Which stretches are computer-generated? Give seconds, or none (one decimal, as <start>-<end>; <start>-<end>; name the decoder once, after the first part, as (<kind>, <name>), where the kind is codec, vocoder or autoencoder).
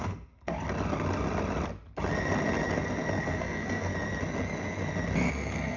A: 0.0-0.5 (codec, SNAC); 3.2-3.9; 5.3-5.8